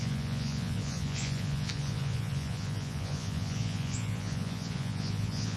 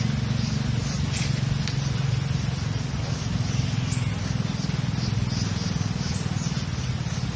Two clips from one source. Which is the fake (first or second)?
first